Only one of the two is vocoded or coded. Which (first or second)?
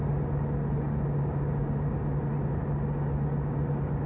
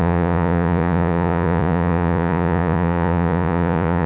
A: second